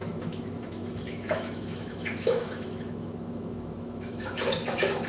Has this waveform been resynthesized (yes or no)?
yes